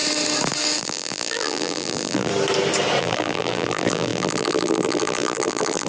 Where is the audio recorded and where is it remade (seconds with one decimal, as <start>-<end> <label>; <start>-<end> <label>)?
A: 0.0-0.8 recorded; 0.8-2.3 remade; 2.3-3.0 recorded; 3.0-5.9 remade

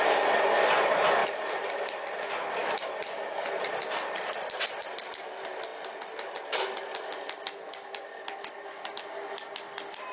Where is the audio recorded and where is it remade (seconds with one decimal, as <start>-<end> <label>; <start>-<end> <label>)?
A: 0.0-1.2 recorded; 1.2-2.0 remade; 2.0-10.1 recorded

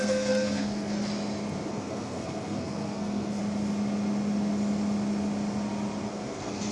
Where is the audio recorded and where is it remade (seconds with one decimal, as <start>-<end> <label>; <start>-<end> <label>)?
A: 0.0-1.1 remade; 1.1-1.7 recorded; 1.7-3.4 remade; 3.4-6.1 recorded; 6.1-6.7 remade

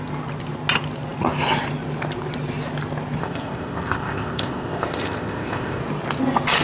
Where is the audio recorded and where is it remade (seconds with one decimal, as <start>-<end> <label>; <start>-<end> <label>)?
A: 0.0-3.2 recorded; 3.2-5.8 remade; 5.8-6.6 recorded

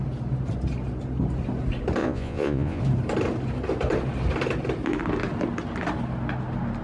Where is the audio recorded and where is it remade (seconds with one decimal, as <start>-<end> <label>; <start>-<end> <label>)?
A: 0.0-2.0 recorded; 2.0-2.8 remade; 2.8-6.8 recorded

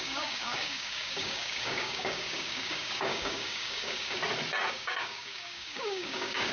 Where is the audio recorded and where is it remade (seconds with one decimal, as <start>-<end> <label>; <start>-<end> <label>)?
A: 0.0-4.2 remade; 4.2-4.7 recorded; 4.7-6.5 remade

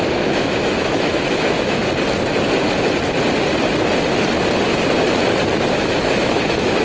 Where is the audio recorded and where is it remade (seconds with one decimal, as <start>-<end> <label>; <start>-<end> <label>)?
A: 0.0-1.8 remade; 1.8-5.7 recorded; 5.7-6.8 remade

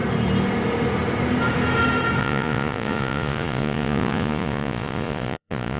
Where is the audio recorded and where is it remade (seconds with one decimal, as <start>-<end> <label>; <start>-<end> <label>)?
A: 0.0-2.2 recorded; 2.2-5.8 remade